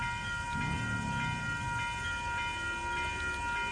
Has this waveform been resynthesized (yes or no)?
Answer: no